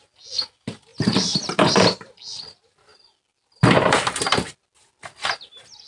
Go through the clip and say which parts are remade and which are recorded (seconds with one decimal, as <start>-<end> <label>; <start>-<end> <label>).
0.0-0.9 recorded; 0.9-2.3 remade; 2.3-5.9 recorded